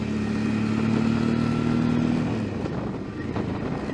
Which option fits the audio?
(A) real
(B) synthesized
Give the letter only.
A